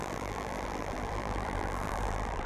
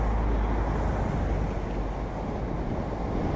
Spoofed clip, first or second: first